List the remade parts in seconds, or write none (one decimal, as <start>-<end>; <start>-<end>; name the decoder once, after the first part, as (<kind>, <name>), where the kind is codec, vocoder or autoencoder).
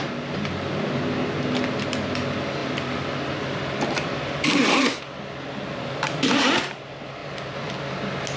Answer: 2.6-5.0 (vocoder, BigVGAN v2); 7.2-7.7